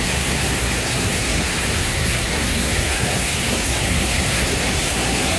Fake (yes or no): yes